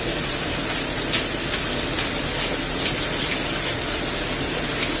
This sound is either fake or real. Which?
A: real